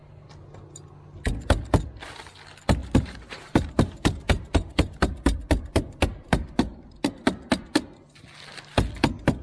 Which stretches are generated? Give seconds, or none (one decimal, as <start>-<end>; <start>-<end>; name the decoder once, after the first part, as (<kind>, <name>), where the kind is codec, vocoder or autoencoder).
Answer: 2.8-7.1 (vocoder, BigVGAN v2)